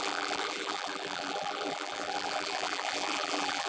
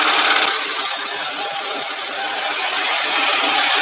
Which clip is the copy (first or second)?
first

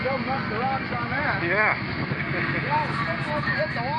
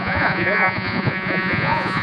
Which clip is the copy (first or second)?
second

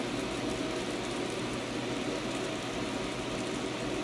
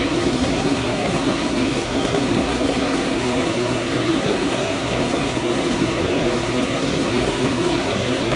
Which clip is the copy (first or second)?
second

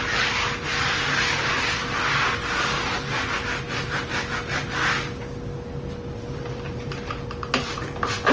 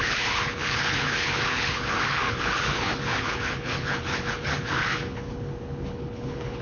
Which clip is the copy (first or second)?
second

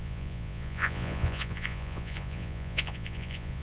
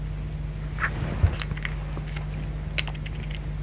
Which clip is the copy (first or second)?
first